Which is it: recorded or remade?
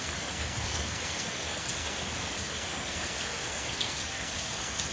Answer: remade